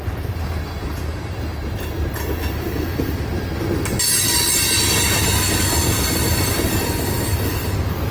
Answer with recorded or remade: recorded